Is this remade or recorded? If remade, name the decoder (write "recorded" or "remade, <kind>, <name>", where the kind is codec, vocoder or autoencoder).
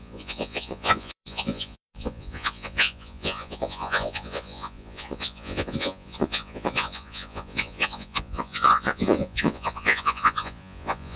remade, vocoder, Vocos